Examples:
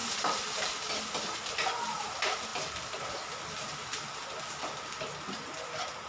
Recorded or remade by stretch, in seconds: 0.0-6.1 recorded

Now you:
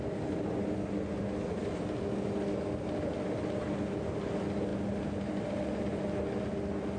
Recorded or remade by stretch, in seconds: 0.0-7.0 recorded

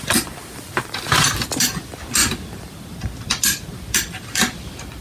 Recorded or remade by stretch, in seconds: 0.0-5.0 recorded

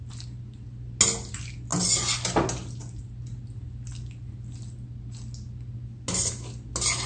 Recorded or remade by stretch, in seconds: 0.0-7.1 recorded

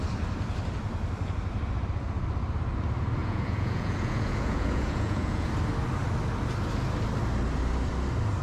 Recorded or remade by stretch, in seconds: 0.0-3.2 recorded; 3.2-5.5 remade; 5.5-8.4 recorded

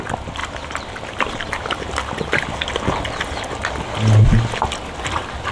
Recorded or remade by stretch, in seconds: 0.0-5.5 recorded